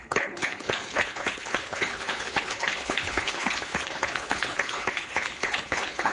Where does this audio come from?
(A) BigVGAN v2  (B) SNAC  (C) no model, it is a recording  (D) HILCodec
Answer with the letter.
D